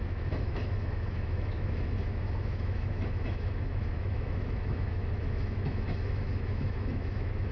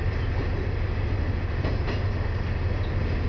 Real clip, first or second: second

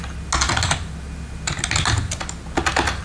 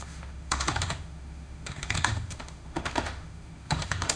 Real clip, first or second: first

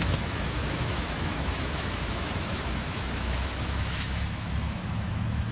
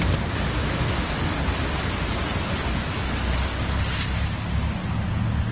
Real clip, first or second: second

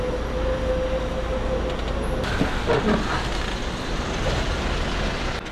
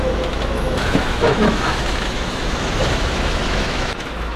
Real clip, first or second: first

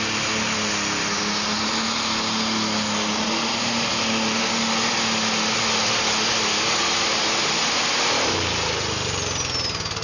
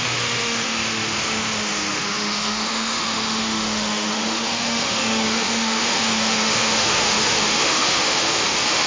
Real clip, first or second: first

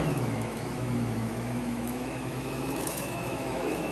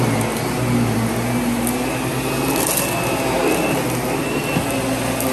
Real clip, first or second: second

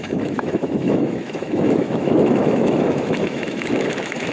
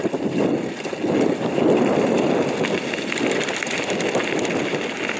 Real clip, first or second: second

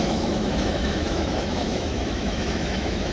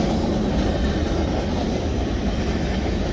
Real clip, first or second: second